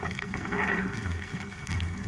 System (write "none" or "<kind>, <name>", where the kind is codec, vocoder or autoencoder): codec, SNAC